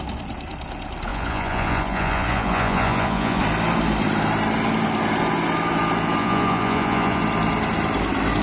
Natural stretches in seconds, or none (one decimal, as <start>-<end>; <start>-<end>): 0.0-1.1; 3.4-6.2; 7.2-8.4

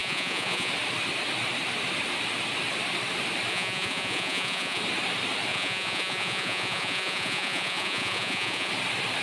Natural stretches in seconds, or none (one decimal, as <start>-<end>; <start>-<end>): 0.7-3.5; 4.8-5.5; 8.7-9.2

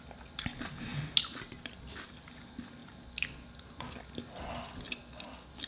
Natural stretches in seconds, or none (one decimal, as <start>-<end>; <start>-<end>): 0.0-5.7

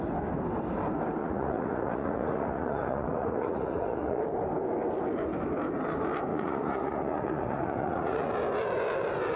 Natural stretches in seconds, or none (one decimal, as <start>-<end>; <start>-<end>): 0.0-1.2; 4.2-6.3; 8.3-9.4

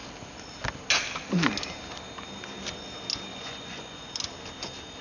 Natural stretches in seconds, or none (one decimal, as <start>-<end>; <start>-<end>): 0.0-3.3; 4.1-5.0